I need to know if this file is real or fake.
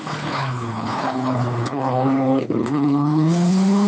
fake